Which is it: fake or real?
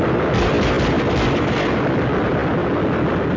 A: real